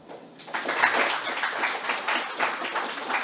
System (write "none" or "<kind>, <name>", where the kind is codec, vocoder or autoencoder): none